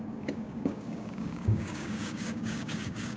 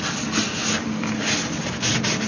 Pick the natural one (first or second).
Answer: second